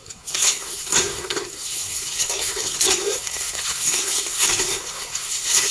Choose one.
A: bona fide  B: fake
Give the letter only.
B